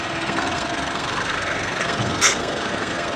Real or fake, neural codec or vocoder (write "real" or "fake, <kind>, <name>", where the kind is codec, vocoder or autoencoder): fake, codec, SNAC